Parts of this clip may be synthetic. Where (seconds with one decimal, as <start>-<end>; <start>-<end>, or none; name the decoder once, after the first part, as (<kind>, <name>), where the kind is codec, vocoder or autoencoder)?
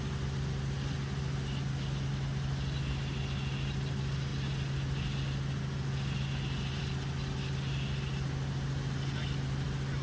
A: none